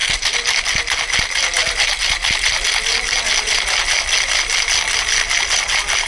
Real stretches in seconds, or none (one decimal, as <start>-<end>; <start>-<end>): 0.0-6.1